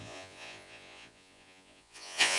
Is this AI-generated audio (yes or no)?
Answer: yes